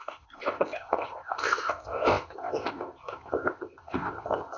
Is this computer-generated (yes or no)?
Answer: yes